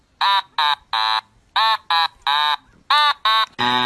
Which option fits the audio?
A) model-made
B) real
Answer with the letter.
B